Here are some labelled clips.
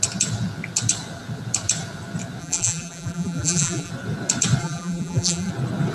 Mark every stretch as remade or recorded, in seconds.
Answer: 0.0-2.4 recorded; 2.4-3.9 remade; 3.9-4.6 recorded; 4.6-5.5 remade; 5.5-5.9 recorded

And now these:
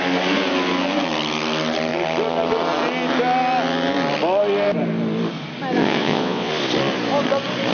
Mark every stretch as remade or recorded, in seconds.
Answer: 0.0-5.8 recorded; 5.8-6.5 remade; 6.5-7.7 recorded

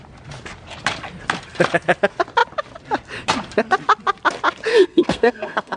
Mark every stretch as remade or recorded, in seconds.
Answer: 0.0-4.7 recorded; 4.7-5.8 remade

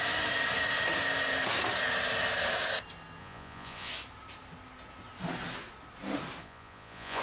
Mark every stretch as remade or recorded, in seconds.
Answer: 0.0-3.2 recorded; 3.2-3.9 remade; 3.9-6.4 recorded; 6.4-7.2 remade

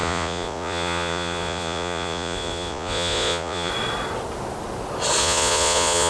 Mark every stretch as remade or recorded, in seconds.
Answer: 0.0-3.7 remade; 3.7-5.2 recorded; 5.2-6.1 remade

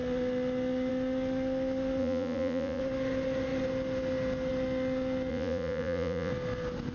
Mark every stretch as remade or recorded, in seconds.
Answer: 0.0-2.0 recorded; 2.0-2.8 remade; 2.8-5.3 recorded; 5.3-6.3 remade; 6.3-6.9 recorded

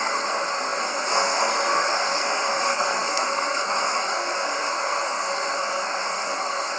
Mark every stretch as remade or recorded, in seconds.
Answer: 0.0-6.8 remade

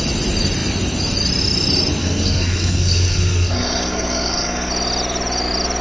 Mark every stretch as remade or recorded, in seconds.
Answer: 0.0-2.0 recorded; 2.0-4.7 remade; 4.7-5.8 recorded